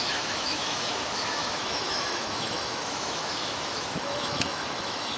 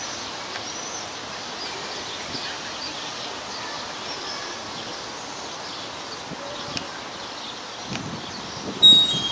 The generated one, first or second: first